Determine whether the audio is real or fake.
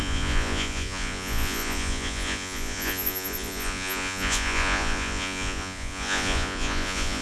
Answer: fake